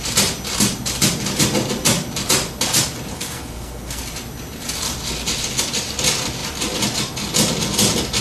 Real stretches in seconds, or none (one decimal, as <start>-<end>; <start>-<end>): 0.0-3.1; 4.0-8.2